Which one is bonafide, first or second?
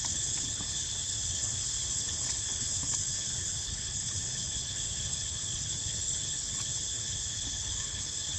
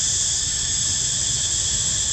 second